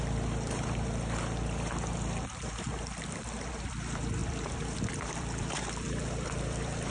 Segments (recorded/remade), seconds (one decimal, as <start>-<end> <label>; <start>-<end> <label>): 0.0-2.7 remade; 2.7-3.5 recorded; 3.5-6.9 remade